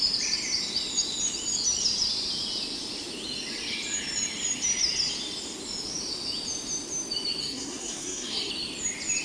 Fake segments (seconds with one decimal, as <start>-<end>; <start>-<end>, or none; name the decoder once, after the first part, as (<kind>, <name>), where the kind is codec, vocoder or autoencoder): 7.4-8.5 (codec, SNAC)

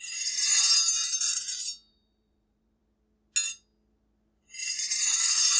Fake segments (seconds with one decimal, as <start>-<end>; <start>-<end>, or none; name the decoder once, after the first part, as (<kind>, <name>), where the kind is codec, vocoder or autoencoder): 0.0-0.5 (vocoder, BigVGAN v2); 1.9-2.8; 4.4-5.6

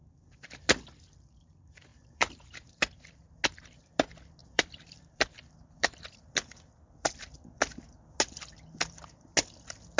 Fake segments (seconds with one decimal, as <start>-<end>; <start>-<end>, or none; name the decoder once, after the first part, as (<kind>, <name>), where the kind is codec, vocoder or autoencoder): 1.9-2.8 (vocoder, BigVGAN v2); 4.4-6.3

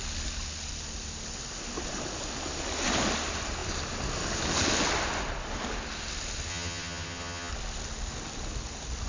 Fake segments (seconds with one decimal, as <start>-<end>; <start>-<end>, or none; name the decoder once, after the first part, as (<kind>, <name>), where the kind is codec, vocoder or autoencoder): 6.5-7.5 (vocoder, HiFi-GAN)

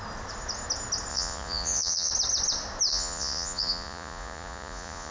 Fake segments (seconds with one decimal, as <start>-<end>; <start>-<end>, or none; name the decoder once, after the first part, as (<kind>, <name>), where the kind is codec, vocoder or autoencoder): 1.1-2.1 (vocoder, Vocos); 2.9-5.1